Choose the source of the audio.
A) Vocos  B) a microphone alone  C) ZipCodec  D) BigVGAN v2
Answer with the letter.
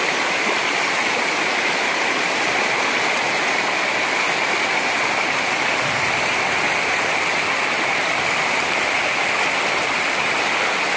B